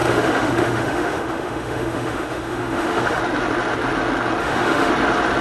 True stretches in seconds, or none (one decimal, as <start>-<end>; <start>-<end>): 3.2-4.4; 4.9-5.4